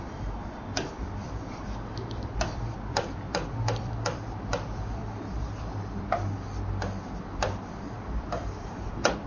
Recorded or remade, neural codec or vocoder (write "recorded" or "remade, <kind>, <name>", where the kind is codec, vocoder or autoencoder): remade, vocoder, BigVGAN v2